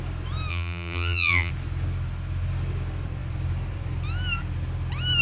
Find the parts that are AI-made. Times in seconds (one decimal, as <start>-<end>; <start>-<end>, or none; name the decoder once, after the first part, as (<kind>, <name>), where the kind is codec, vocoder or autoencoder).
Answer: 0.5-1.5 (vocoder, BigVGAN v2)